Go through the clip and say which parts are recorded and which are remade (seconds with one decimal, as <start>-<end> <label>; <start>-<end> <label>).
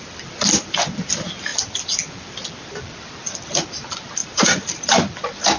0.0-4.2 recorded; 4.2-5.1 remade; 5.1-5.6 recorded